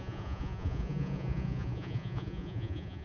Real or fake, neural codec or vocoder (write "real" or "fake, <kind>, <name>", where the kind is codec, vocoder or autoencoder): fake, vocoder, Vocos